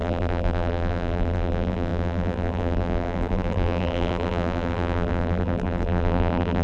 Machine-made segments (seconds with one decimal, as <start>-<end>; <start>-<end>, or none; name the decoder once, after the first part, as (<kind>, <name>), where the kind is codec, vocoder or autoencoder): 0.0-6.6 (vocoder, BigVGAN v2)